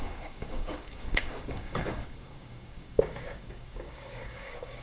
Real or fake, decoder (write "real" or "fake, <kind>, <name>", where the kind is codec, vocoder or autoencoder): fake, codec, DAC